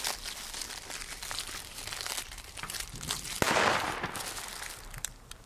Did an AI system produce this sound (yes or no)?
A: no